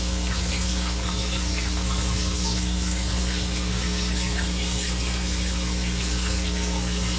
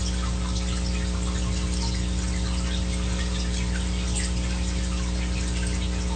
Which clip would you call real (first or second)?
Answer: second